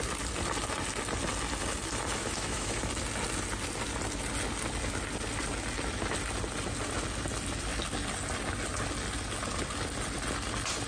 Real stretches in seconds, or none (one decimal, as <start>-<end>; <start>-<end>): 0.0-2.2; 2.8-10.9